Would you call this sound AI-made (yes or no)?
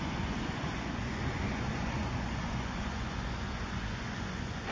yes